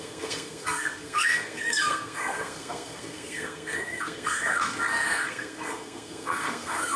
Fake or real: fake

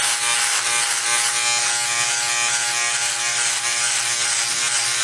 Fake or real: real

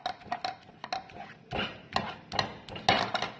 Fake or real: real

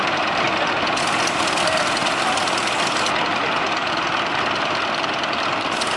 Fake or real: fake